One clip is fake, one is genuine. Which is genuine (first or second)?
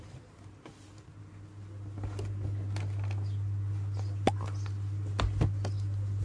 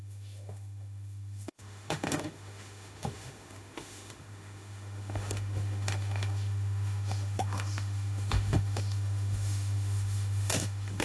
first